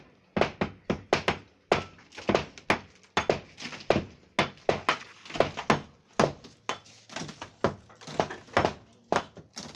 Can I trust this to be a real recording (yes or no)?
yes